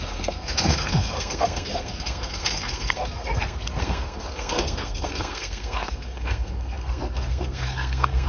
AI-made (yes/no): yes